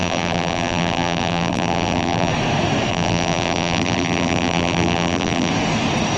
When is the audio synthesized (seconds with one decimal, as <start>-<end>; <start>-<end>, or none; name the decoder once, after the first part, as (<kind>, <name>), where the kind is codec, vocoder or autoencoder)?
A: 0.0-2.3 (vocoder, BigVGAN v2); 2.9-5.5